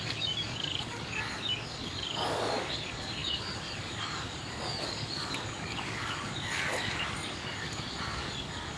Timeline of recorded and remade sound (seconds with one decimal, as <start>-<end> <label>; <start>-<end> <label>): 0.0-8.8 remade